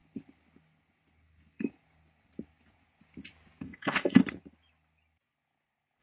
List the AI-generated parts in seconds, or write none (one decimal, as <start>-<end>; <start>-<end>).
3.6-4.2